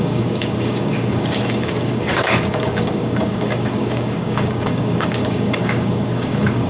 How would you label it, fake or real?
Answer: fake